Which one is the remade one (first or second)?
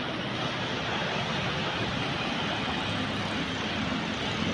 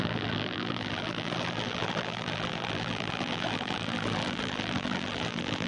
second